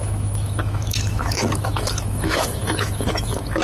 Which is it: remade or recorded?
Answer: remade